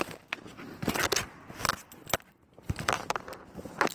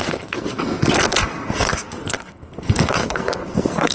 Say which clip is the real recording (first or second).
first